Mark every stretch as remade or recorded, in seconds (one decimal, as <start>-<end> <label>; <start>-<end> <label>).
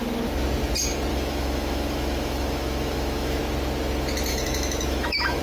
0.0-1.1 recorded; 1.1-3.4 remade; 3.4-4.3 recorded; 4.3-5.4 remade